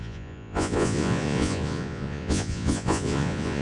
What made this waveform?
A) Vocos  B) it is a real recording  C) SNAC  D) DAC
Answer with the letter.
A